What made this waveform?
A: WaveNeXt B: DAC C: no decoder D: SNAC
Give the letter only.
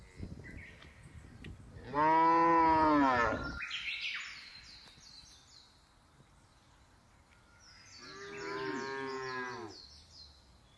C